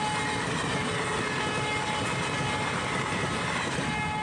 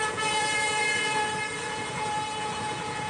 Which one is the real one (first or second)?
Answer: first